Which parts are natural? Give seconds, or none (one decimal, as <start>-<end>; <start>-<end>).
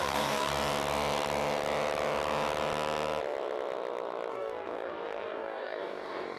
0.5-4.3